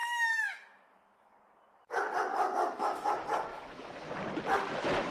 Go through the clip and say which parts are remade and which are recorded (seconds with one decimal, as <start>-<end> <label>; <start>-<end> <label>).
0.0-1.3 remade; 1.3-2.3 recorded; 2.3-3.1 remade; 3.1-3.5 recorded; 3.5-4.1 remade; 4.1-5.1 recorded